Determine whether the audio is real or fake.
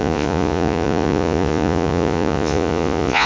fake